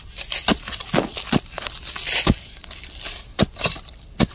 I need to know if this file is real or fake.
real